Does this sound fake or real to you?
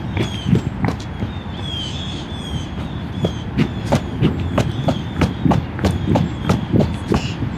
real